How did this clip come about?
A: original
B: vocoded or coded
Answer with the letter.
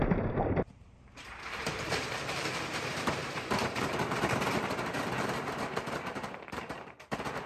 B